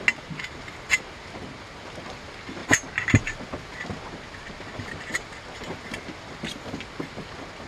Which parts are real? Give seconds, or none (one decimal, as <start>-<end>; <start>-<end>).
0.0-7.7

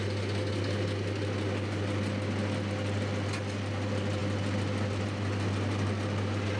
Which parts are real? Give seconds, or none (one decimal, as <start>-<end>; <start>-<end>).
0.0-4.2

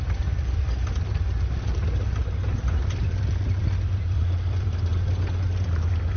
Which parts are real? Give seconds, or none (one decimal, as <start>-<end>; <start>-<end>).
4.9-5.5

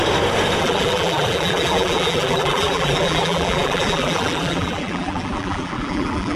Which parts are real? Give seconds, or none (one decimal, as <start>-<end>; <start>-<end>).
0.0-0.6

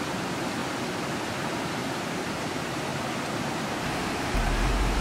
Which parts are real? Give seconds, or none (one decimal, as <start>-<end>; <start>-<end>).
0.6-1.3; 1.8-2.3; 2.9-3.4

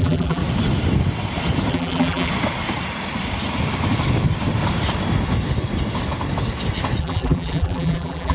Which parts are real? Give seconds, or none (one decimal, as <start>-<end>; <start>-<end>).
0.4-1.7; 2.3-7.0

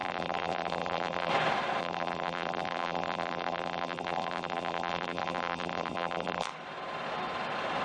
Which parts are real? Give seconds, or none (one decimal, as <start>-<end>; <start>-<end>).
1.3-1.8; 6.5-7.8

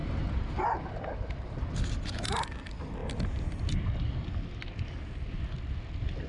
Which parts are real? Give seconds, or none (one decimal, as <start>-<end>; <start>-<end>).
1.0-6.3